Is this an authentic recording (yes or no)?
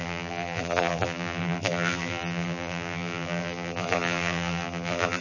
no